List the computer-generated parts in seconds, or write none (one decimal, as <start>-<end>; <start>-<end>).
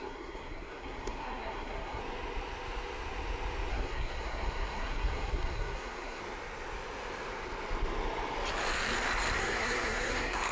0.0-2.0; 3.7-6.2; 9.4-10.5